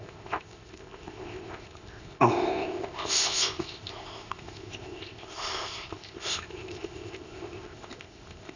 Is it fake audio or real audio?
fake